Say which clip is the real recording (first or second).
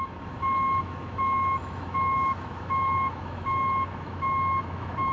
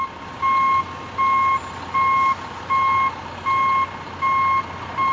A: second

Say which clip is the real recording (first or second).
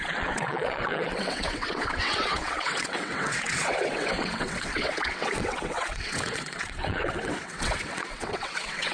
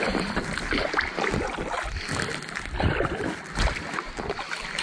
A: second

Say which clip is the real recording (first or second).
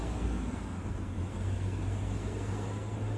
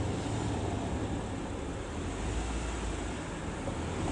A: second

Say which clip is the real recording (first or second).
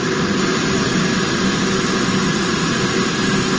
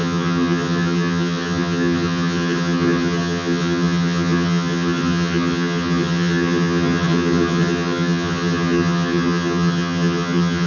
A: first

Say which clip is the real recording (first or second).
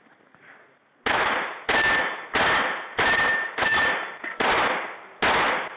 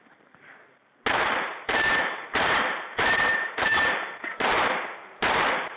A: first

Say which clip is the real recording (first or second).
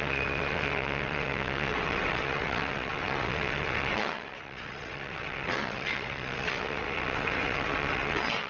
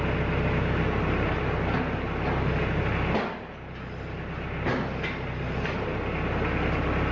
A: second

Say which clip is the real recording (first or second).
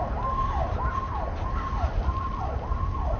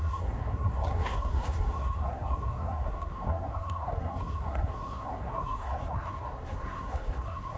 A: first